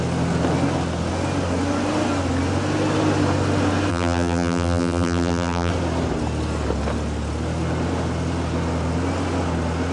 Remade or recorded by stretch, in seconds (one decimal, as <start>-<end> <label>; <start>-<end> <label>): 0.0-3.9 recorded; 3.9-5.7 remade; 5.7-9.9 recorded

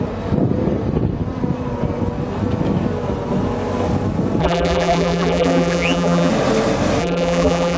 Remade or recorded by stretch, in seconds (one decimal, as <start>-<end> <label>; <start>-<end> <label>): 0.0-4.4 recorded; 4.4-6.3 remade; 6.3-7.0 recorded; 7.0-7.8 remade

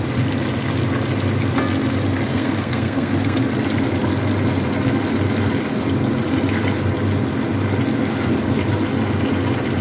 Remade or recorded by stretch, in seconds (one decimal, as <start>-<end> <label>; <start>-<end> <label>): 0.0-2.3 recorded; 2.3-3.4 remade; 3.4-9.8 recorded

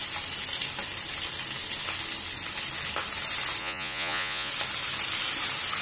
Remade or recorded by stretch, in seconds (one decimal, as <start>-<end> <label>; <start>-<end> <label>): 0.0-3.6 recorded; 3.6-4.5 remade; 4.5-5.8 recorded

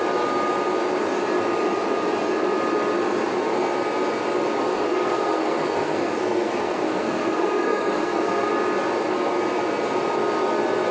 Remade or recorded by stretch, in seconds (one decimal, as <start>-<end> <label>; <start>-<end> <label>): 0.0-4.7 recorded; 4.7-8.5 remade; 8.5-10.9 recorded

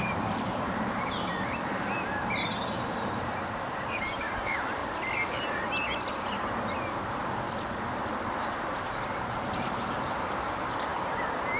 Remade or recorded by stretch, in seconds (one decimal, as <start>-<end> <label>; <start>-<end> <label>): 0.0-4.8 remade; 4.8-8.3 recorded; 8.3-11.6 remade